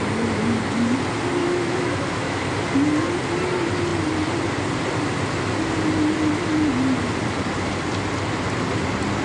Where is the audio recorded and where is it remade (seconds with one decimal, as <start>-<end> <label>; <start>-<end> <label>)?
0.0-1.4 recorded; 1.4-2.5 remade; 2.5-9.2 recorded